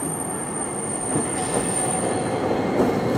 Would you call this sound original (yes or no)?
yes